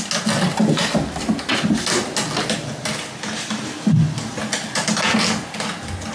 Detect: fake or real real